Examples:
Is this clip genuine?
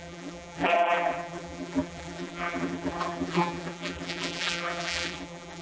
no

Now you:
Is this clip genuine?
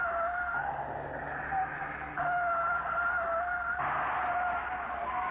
yes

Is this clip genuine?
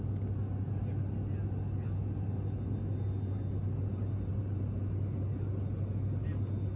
yes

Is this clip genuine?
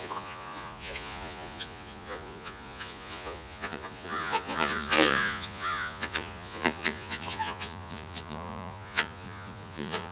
no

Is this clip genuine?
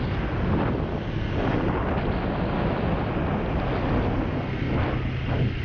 yes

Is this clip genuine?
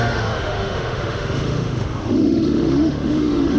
no